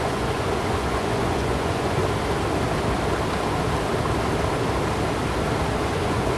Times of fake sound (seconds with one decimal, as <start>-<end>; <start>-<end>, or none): 0.0-2.0; 5.8-6.4